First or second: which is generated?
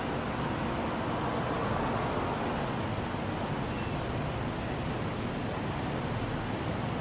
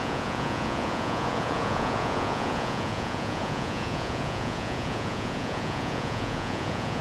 second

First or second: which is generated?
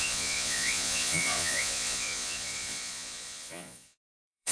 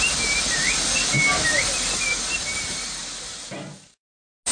first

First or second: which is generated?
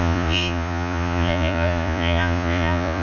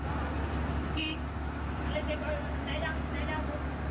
first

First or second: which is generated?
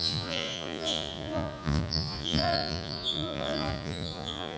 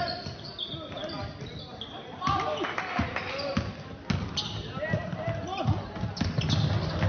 first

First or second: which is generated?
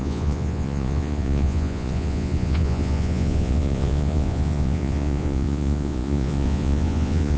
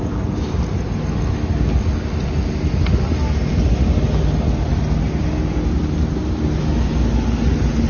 first